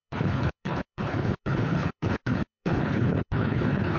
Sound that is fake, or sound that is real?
fake